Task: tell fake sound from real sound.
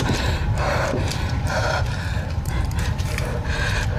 fake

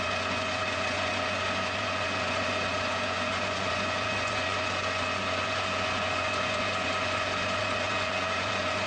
fake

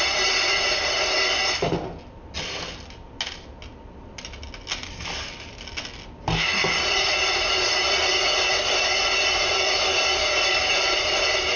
real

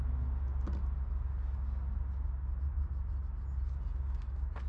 real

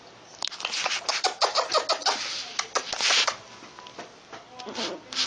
real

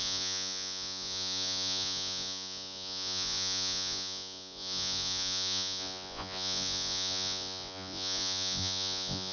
fake